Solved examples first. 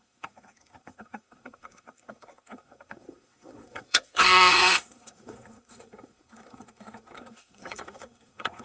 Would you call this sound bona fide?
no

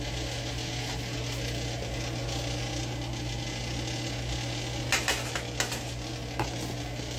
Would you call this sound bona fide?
yes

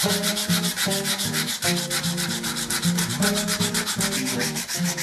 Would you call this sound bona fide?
no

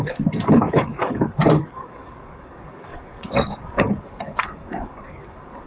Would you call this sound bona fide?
no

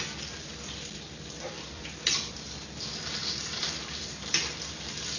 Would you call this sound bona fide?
yes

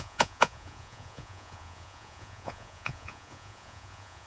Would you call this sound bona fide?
no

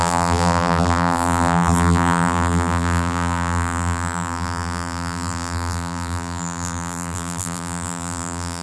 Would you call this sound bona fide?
no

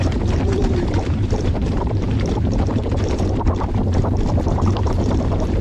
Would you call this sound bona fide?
no